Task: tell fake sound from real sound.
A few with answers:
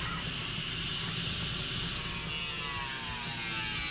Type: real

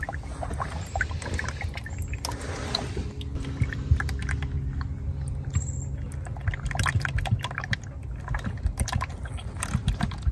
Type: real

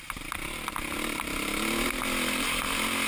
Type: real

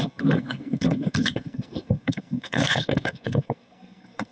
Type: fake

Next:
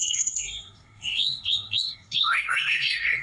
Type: fake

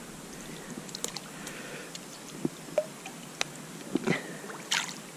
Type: real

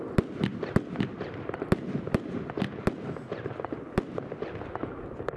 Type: real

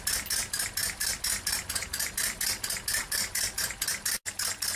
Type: real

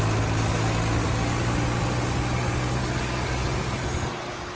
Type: real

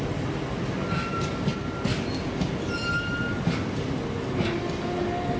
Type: real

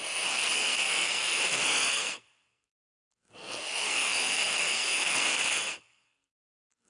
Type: fake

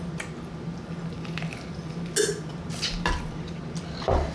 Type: real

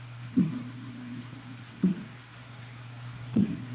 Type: fake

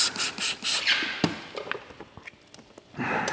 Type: real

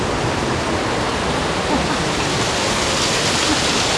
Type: real